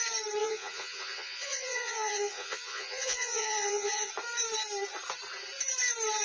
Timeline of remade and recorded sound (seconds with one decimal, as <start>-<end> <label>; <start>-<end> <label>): 0.0-0.4 recorded; 0.4-4.1 remade; 4.1-6.2 recorded